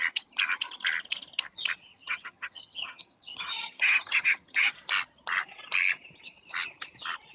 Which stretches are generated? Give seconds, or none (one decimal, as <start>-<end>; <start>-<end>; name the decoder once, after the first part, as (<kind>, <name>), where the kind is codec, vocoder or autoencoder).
1.9-4.7 (vocoder, HiFi-GAN)